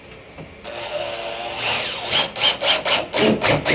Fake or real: real